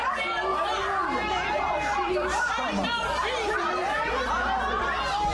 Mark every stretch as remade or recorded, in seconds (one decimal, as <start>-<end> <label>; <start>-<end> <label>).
0.0-0.5 recorded; 0.5-3.0 remade; 3.0-5.3 recorded